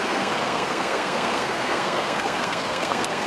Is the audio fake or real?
fake